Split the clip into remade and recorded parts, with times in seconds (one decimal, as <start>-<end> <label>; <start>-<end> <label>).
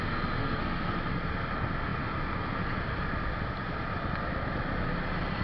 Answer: 0.0-0.4 recorded; 0.4-0.9 remade; 0.9-5.4 recorded